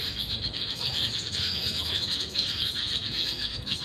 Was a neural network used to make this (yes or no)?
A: yes